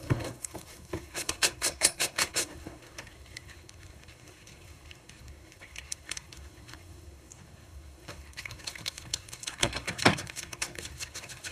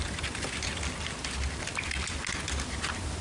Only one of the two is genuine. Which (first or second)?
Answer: second